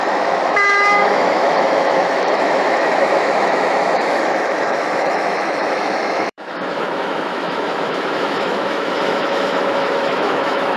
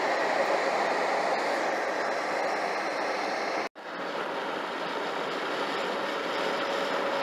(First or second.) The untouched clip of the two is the second